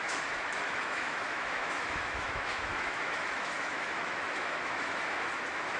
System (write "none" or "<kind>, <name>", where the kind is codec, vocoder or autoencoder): autoencoder, DAC-VAE